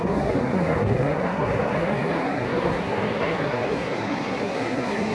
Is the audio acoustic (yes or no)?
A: no